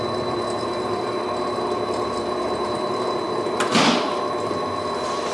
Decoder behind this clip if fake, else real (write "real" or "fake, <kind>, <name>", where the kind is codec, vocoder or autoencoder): fake, vocoder, BigVGAN v2